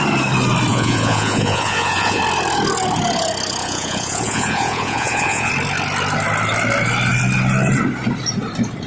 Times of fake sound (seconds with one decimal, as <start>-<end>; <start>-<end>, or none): 0.7-2.2; 3.6-5.5